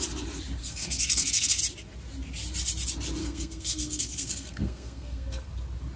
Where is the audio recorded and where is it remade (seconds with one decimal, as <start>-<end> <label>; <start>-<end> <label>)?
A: 0.0-0.6 recorded; 0.6-1.6 remade; 1.6-3.2 recorded; 3.2-5.5 remade; 5.5-6.0 recorded